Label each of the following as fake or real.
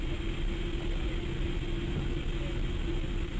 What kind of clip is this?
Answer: real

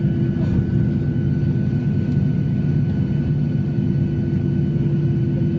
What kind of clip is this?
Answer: real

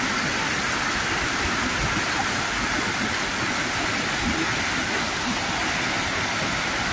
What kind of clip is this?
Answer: real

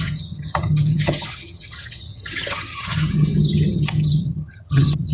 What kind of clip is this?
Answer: fake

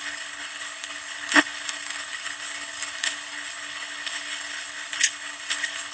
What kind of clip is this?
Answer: fake